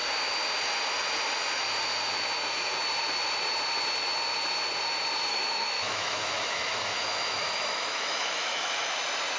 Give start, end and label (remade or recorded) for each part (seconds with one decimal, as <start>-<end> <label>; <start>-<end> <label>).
0.0-5.3 recorded; 5.3-9.0 remade; 9.0-9.4 recorded